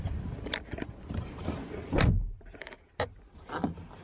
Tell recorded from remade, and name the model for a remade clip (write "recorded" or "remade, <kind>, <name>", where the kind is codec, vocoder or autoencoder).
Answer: recorded